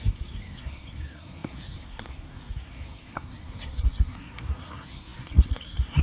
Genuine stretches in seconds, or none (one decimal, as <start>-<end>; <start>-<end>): none